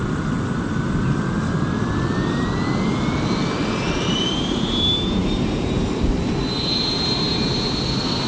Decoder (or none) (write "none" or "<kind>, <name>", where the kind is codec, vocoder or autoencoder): none